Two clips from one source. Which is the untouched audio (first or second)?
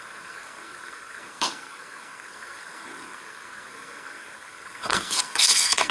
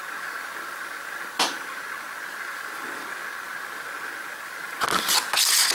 second